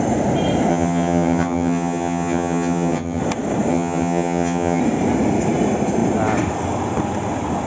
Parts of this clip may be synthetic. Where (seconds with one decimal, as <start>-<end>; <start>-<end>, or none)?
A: 0.7-3.2; 3.7-4.8

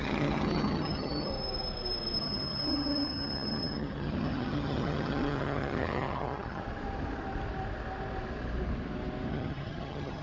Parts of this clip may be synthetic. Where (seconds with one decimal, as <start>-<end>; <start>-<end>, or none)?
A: 0.0-1.3; 2.2-6.6; 9.3-10.2

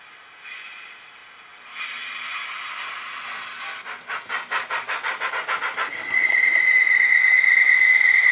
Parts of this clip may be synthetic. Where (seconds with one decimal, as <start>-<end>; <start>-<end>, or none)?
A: none

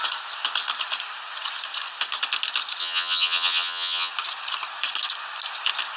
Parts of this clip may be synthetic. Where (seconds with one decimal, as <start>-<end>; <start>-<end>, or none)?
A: 2.8-4.1